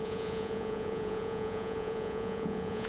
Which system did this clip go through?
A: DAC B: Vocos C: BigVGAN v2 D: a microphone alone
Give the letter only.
B